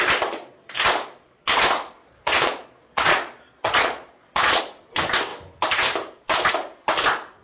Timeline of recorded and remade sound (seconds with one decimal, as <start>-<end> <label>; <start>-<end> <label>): 0.0-2.0 recorded; 2.0-4.6 remade; 4.6-7.4 recorded